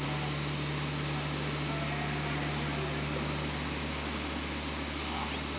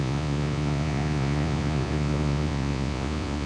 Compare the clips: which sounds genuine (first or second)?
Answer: first